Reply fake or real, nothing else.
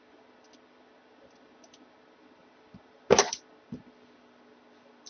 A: real